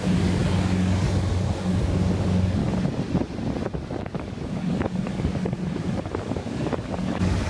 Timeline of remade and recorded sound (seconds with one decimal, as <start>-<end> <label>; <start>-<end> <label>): 0.0-2.6 remade; 2.6-4.0 recorded; 4.0-7.5 remade